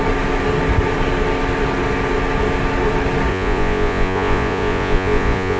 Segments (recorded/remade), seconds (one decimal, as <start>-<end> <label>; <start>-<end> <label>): 0.0-3.3 recorded; 3.3-5.6 remade